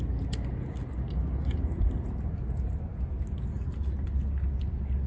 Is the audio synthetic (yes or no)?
no